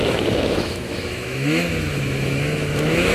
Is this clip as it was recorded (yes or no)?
no